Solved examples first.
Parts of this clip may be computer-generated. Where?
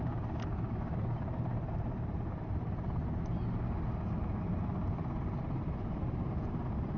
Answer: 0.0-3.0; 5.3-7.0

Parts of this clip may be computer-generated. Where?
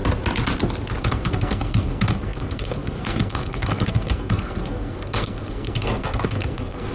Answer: 1.0-6.9